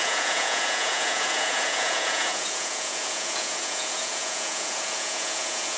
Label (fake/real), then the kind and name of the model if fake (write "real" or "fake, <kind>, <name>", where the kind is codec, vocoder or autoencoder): fake, vocoder, Vocos